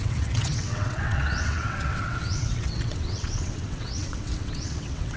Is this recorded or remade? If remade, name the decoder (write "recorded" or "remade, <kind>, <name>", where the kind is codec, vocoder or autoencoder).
remade, vocoder, WaveNeXt